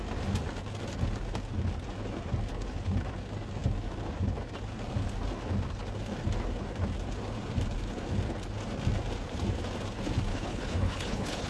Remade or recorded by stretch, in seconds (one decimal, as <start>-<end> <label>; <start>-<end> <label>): 0.0-10.3 recorded; 10.3-11.5 remade